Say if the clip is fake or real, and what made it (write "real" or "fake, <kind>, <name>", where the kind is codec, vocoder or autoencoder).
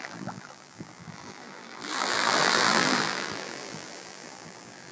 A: fake, vocoder, BigVGAN v2